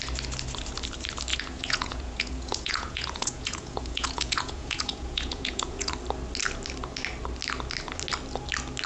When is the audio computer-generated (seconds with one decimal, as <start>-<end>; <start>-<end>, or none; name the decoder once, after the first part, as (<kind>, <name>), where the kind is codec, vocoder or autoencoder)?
1.3-5.9 (vocoder, Vocos)